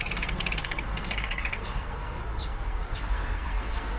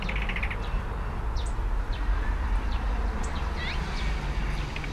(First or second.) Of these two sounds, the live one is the second